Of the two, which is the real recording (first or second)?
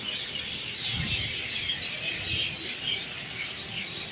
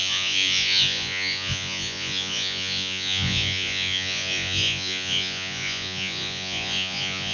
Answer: first